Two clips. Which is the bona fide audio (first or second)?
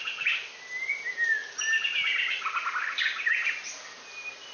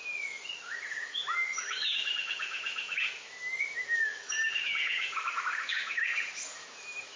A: first